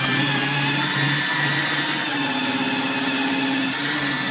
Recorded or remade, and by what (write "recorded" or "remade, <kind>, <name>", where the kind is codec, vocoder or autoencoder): recorded